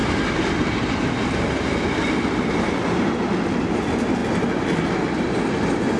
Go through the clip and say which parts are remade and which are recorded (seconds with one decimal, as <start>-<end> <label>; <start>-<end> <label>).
0.0-6.0 recorded